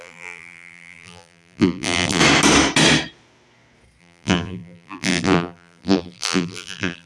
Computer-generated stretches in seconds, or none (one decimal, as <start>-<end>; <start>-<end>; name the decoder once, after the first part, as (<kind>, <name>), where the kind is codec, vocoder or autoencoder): 0.0-2.2 (vocoder, BigVGAN v2); 4.0-7.1